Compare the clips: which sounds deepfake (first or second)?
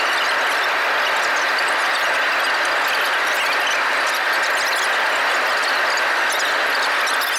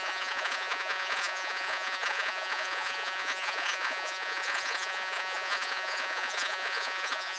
second